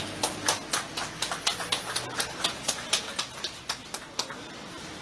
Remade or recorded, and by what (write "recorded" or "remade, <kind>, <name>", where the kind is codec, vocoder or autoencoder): recorded